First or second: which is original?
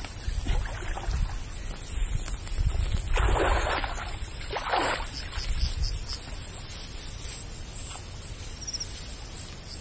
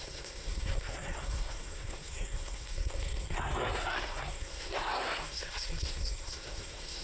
first